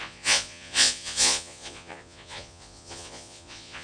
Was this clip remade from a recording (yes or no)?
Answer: yes